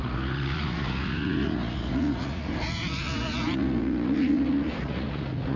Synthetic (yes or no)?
yes